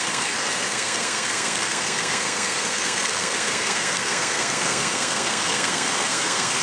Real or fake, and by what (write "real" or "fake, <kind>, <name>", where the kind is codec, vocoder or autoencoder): fake, codec, SNAC